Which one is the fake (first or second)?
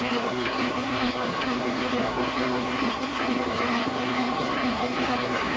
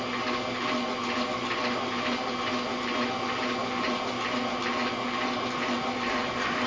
first